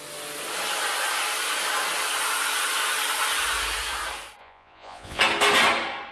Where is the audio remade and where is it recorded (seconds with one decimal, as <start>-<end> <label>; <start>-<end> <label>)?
0.0-4.4 recorded; 4.4-5.2 remade; 5.2-6.1 recorded